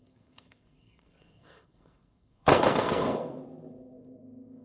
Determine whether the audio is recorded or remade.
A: remade